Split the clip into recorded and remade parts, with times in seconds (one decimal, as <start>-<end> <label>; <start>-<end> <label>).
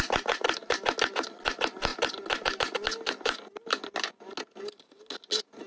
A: 0.0-5.7 recorded